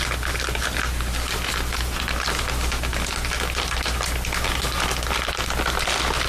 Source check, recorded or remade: recorded